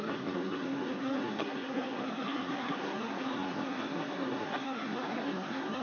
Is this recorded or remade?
remade